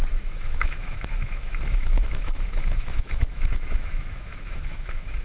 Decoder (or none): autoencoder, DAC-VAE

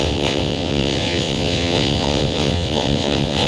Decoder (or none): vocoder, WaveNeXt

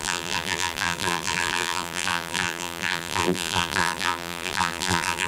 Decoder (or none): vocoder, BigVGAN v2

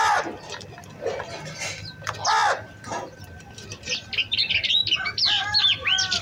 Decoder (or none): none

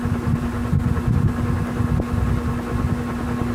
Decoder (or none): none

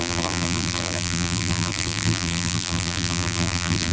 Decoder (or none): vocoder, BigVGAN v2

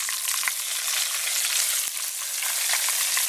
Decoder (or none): none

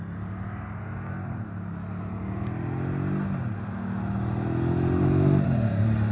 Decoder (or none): none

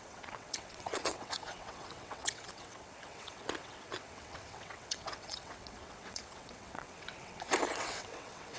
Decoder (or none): vocoder, WaveNeXt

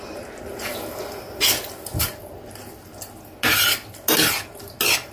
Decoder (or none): none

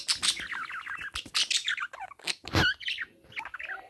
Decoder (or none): none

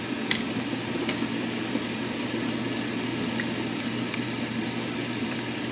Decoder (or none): none